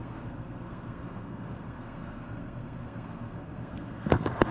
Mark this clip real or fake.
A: fake